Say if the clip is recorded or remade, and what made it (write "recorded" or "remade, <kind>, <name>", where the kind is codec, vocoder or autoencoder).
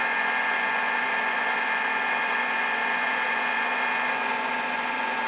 remade, vocoder, Vocos